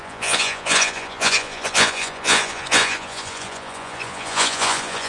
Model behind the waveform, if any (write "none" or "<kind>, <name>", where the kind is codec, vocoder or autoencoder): vocoder, Vocos